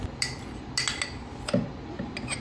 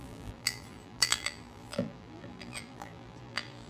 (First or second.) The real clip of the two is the first